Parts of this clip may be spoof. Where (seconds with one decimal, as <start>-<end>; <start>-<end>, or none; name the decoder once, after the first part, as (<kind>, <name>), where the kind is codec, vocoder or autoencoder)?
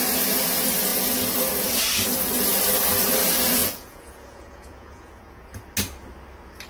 3.6-5.6 (vocoder, Vocos)